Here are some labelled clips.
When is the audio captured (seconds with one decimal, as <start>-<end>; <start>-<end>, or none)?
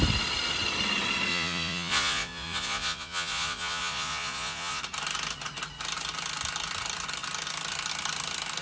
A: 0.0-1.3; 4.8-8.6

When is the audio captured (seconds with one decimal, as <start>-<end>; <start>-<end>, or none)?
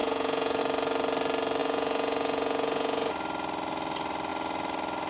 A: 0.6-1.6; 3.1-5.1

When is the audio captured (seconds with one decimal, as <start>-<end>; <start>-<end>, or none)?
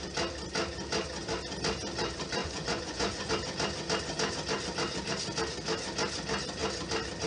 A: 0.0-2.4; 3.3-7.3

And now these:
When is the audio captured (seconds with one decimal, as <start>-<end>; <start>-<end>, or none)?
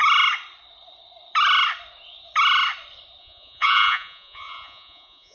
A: 0.0-3.2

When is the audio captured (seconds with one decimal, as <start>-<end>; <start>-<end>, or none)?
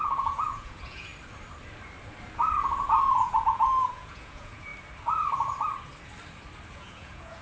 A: 1.1-2.8; 4.7-6.7